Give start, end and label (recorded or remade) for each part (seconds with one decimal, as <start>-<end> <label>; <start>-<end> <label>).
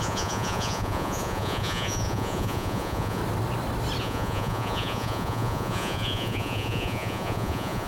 0.0-3.2 remade; 3.2-4.0 recorded; 4.0-7.9 remade